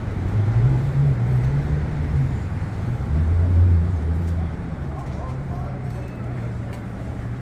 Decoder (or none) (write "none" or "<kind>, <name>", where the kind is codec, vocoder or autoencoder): vocoder, BigVGAN v2